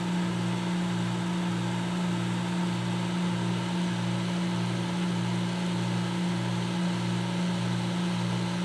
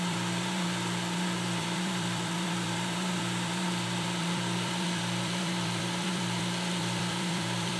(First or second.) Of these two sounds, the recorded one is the first